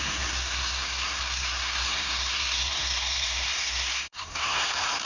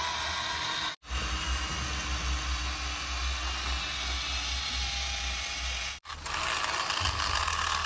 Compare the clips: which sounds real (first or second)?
second